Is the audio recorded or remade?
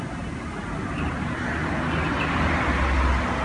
recorded